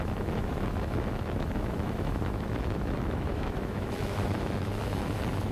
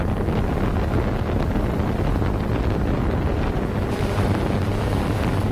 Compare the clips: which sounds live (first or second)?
second